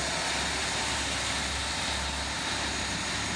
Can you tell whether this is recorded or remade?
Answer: recorded